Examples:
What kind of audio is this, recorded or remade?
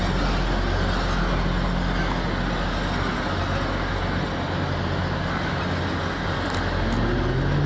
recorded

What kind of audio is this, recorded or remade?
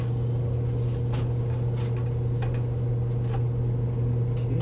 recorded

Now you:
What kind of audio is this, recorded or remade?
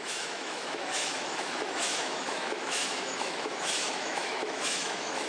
remade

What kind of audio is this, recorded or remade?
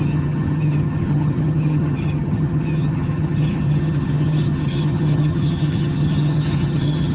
remade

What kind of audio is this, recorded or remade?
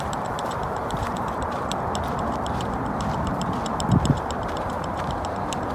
remade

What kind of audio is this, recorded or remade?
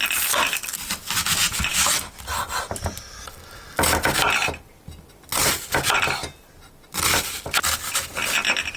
recorded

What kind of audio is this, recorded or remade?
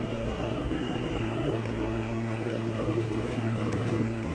remade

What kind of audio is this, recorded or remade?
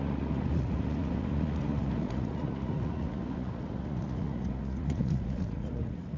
remade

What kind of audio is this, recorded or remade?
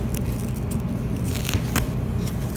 recorded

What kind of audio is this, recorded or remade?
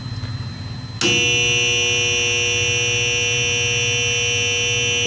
recorded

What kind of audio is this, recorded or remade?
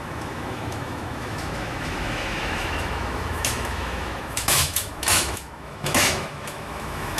remade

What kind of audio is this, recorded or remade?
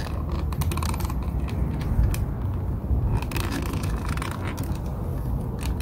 recorded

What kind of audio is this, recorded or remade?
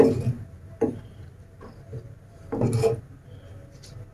recorded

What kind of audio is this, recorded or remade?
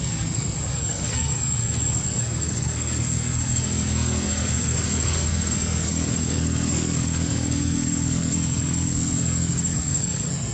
remade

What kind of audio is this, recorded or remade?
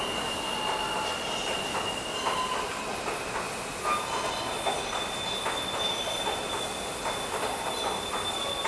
recorded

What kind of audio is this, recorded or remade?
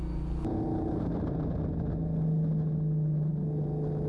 recorded